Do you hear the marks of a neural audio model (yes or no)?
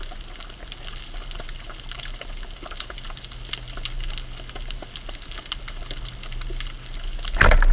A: no